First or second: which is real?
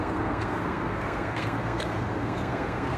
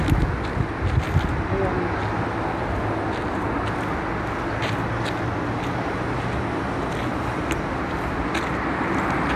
second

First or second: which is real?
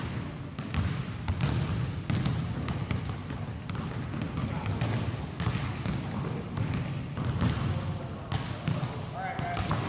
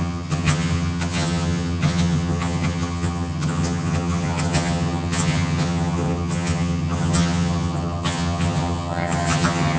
first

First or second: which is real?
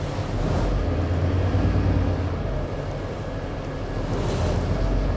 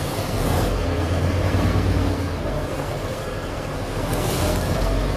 first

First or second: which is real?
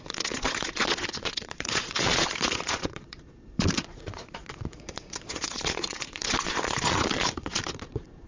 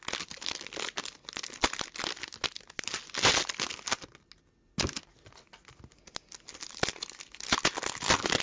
second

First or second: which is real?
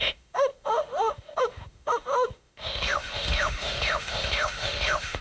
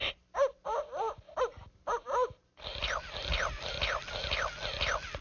second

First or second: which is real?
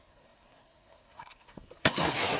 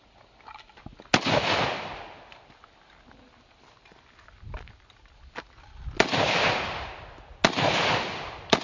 second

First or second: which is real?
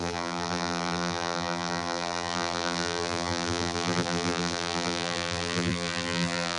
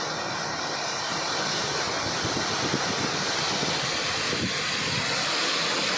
second